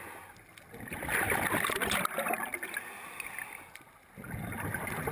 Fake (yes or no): no